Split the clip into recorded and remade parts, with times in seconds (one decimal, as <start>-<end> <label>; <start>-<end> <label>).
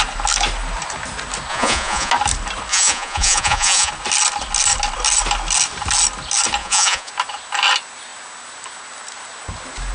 0.0-1.5 recorded; 1.5-2.1 remade; 2.1-2.7 recorded; 2.7-3.9 remade; 3.9-6.6 recorded; 6.6-7.1 remade; 7.1-9.9 recorded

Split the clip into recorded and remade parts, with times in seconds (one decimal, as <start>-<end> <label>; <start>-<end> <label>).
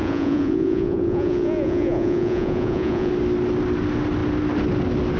0.0-3.1 remade; 3.1-5.2 recorded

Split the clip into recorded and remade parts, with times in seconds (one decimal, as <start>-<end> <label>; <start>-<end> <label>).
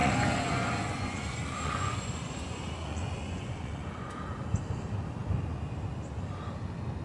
0.0-4.2 remade; 4.2-7.0 recorded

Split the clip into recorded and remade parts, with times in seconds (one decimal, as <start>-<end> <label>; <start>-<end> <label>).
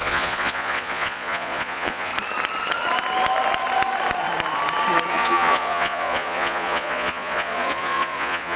0.0-2.1 remade; 2.1-5.1 recorded; 5.1-8.6 remade